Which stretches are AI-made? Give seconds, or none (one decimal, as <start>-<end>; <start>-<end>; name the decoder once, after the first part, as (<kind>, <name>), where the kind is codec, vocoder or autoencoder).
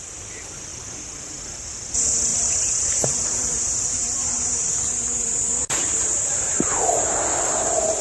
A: 2.3-3.6 (vocoder, BigVGAN v2); 4.3-6.7